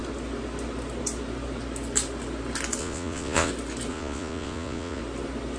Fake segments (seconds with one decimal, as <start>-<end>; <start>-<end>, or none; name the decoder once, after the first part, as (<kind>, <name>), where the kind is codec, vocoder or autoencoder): 2.8-3.5 (vocoder, Vocos); 3.9-5.0

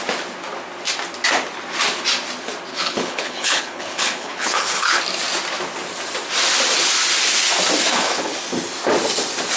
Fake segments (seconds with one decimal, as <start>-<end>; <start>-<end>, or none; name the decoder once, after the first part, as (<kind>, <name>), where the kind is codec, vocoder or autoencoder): 2.7-5.0 (codec, HILCodec); 7.9-8.4

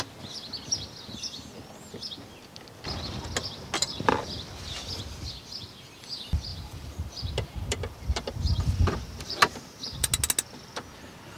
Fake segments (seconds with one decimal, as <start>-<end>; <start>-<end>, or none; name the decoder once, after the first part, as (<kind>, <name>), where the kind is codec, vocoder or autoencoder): 6.5-10.1 (vocoder, BigVGAN v2)

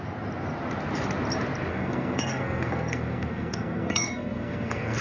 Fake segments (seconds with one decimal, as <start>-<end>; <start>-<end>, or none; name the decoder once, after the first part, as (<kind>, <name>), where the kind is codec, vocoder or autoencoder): 1.7-5.0 (codec, SNAC)

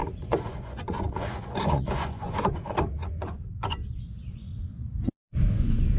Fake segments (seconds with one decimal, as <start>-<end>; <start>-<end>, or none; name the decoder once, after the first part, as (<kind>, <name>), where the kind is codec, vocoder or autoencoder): 0.0-3.8 (vocoder, Vocos); 4.3-6.0

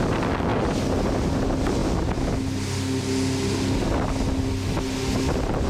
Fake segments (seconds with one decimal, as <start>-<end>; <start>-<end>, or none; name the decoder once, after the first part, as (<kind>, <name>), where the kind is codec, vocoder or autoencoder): none

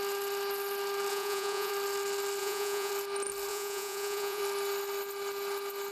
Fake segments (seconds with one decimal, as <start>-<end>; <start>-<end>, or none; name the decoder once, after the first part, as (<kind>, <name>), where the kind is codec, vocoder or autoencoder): 1.1-1.7 (vocoder, Vocos); 2.4-2.9; 3.5-4.4

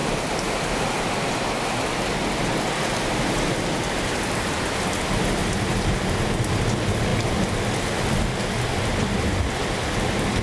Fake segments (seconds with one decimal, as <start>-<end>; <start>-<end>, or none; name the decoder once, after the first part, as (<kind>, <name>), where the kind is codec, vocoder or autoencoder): 5.4-6.0 (vocoder, BigVGAN v2)